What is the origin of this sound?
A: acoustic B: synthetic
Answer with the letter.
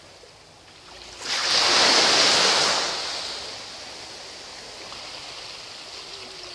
A